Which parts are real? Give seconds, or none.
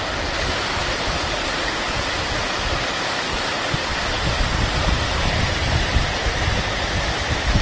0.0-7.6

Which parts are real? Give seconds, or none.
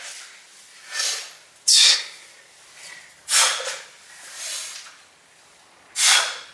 0.0-6.5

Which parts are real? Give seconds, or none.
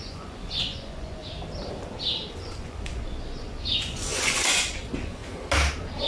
1.2-2.3; 5.2-6.1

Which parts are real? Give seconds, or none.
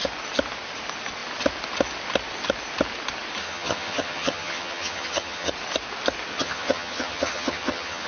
0.0-3.4; 5.5-6.3